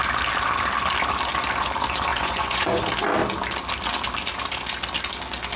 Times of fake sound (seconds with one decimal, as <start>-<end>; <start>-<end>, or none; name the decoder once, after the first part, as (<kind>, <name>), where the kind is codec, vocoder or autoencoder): 2.1-2.8 (vocoder, Vocos)